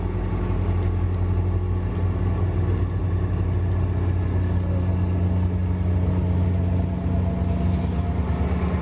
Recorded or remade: recorded